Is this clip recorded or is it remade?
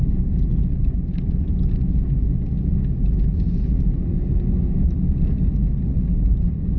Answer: recorded